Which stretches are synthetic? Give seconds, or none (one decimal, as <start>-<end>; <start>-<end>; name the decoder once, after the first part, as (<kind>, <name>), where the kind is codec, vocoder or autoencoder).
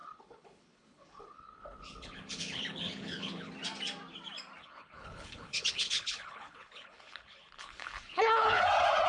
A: 0.0-3.5 (codec, HILCodec); 4.6-8.6